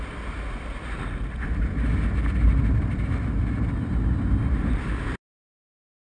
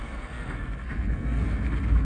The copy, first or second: second